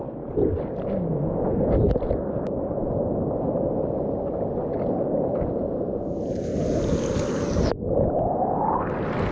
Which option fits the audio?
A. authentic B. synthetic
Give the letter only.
A